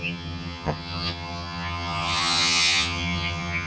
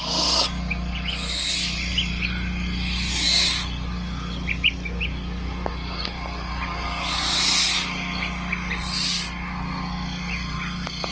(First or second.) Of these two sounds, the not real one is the first